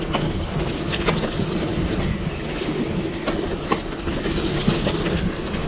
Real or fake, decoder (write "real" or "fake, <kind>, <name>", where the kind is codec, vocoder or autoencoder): real